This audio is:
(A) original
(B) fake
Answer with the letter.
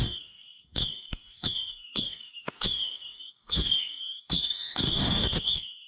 B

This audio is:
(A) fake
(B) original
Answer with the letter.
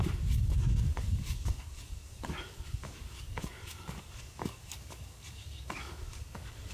A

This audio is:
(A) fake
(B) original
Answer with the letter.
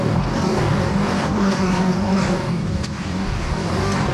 A